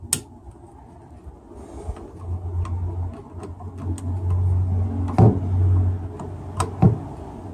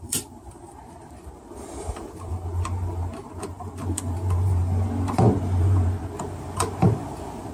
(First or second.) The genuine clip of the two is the first